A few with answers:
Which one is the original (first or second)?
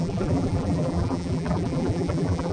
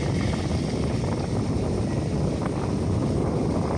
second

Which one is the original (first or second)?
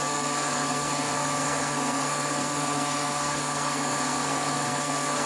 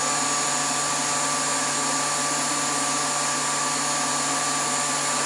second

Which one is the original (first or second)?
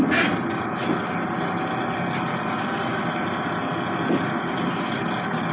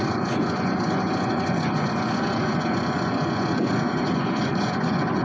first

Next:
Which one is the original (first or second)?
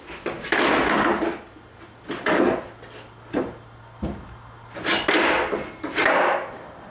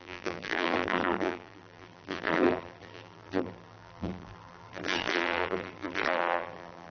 first